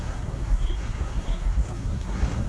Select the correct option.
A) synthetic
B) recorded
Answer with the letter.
A